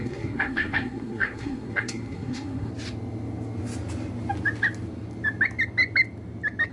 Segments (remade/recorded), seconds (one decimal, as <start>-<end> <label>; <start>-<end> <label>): 0.0-2.7 remade; 2.7-6.7 recorded